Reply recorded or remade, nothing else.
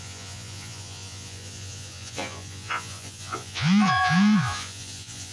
remade